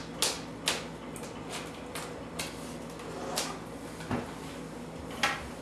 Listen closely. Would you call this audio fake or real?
real